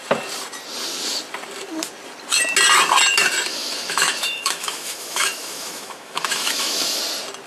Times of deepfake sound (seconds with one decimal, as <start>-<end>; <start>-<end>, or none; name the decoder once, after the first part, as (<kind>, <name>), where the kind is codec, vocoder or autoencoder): 3.5-7.0 (autoencoder, DAC-VAE)